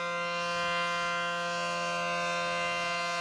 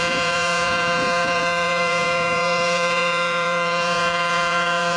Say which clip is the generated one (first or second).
second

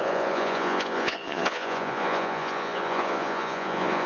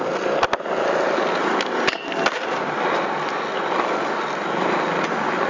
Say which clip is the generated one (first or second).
first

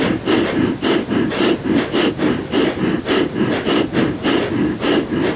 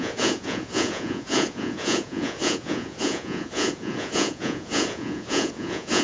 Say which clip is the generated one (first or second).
second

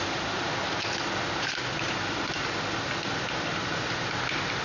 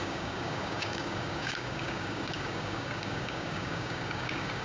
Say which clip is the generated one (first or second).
second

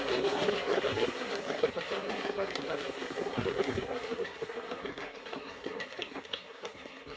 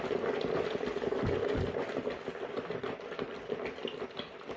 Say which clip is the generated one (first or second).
first